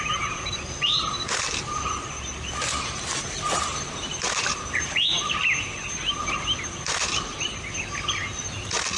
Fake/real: fake